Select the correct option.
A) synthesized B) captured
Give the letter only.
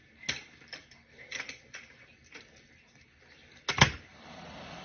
B